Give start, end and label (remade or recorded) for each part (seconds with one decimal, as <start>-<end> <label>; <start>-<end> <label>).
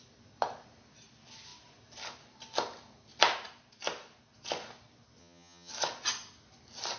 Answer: 0.0-5.2 recorded; 5.2-5.7 remade; 5.7-7.0 recorded